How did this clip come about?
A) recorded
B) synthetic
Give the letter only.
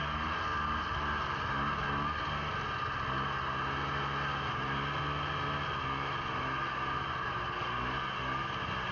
A